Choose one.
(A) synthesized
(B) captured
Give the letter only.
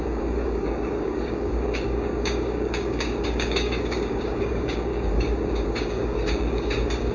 A